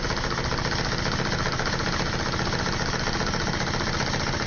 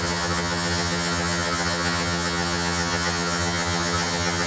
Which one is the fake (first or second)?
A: second